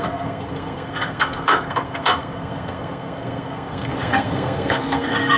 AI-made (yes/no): yes